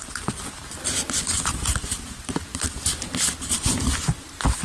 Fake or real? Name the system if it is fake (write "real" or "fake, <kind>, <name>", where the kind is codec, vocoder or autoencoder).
real